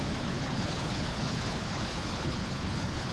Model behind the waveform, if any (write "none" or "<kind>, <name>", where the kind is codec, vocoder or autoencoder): codec, HILCodec